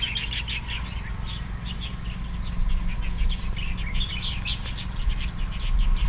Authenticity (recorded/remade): recorded